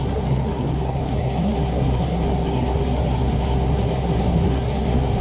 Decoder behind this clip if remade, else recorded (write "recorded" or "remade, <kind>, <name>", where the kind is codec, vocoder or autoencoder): remade, codec, SNAC